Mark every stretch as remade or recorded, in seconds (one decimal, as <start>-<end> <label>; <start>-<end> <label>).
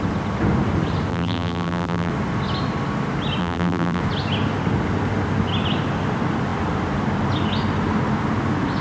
0.0-1.1 recorded; 1.1-2.1 remade; 2.1-3.4 recorded; 3.4-4.0 remade; 4.0-8.8 recorded